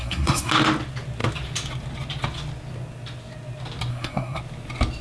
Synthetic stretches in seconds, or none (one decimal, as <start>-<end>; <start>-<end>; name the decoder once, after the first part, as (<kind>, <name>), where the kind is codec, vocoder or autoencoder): 0.0-0.5 (codec, SNAC); 3.9-4.4

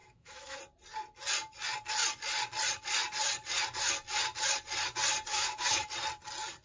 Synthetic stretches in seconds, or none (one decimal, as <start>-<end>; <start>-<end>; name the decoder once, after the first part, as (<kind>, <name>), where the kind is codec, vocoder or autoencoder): 0.0-0.6 (autoencoder, DAC-VAE); 5.3-5.9

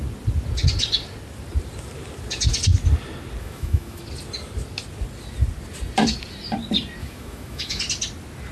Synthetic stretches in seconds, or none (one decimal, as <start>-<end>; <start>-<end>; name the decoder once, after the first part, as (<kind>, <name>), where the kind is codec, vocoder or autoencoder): 3.4-4.0 (autoencoder, DAC-VAE); 7.0-7.8

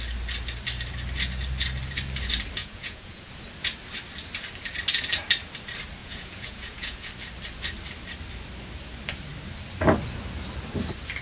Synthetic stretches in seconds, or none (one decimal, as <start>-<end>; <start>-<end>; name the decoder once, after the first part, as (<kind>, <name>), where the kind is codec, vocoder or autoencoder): 2.6-3.3 (vocoder, Vocos); 6.0-7.1

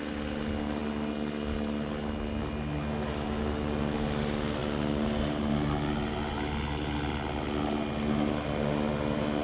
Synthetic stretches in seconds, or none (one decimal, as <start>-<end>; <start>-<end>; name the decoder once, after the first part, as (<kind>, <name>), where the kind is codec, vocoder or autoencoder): none

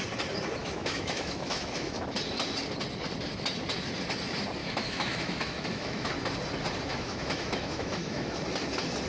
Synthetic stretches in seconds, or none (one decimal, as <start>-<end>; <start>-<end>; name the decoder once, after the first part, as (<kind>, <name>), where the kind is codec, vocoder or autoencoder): 0.6-2.1 (autoencoder, DAC-VAE); 4.6-6.1; 6.9-8.4